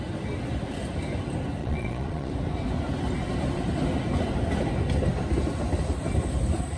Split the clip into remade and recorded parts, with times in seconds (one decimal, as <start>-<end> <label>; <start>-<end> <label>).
0.0-1.6 recorded; 1.6-2.3 remade; 2.3-6.8 recorded